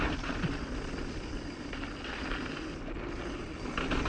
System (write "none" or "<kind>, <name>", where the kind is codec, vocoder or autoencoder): none